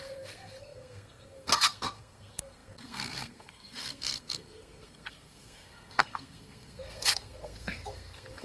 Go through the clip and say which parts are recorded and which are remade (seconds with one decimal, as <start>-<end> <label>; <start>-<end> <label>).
0.0-8.4 remade